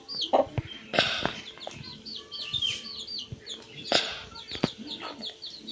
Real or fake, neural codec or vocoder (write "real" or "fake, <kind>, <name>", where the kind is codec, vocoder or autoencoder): real